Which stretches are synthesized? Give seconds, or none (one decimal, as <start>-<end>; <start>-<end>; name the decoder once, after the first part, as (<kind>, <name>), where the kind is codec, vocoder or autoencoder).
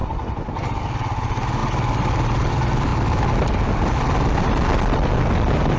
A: none